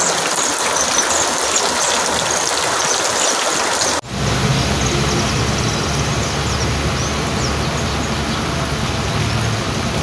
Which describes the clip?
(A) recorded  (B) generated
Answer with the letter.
A